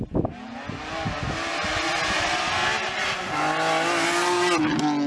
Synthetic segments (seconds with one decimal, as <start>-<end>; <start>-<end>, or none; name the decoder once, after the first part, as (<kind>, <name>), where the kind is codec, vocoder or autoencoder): none